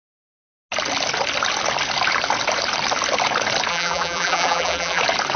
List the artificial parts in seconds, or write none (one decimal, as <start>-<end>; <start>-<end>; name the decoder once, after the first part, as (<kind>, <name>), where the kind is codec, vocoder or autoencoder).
3.7-5.0 (vocoder, BigVGAN v2)